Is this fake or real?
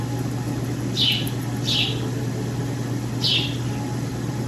real